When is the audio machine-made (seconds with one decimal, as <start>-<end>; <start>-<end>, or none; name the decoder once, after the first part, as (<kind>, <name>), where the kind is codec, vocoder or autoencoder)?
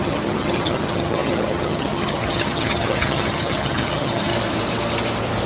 0.0-4.3 (vocoder, HiFi-GAN)